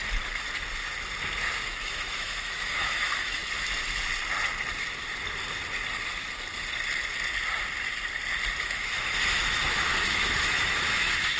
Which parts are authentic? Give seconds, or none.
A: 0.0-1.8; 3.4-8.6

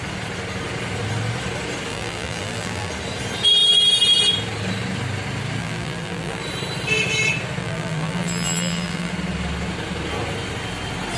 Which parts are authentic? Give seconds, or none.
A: 0.0-1.9; 2.9-5.6; 6.4-7.6; 9.1-11.2

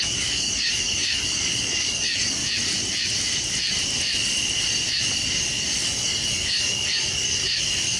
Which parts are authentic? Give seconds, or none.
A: 2.4-5.9

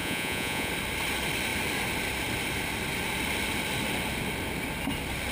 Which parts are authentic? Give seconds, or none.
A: 0.7-5.3

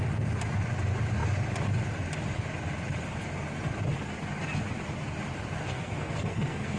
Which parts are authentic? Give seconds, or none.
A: 0.0-5.6

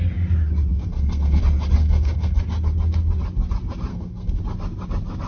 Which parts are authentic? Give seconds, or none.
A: 0.0-0.7; 1.4-1.8; 2.4-3.9; 4.4-5.3

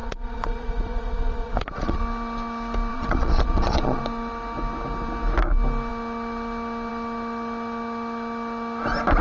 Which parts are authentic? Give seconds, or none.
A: 2.0-2.9; 4.0-9.2

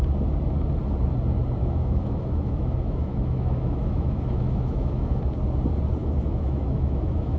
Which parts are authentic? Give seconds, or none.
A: 0.0-1.6; 5.2-6.0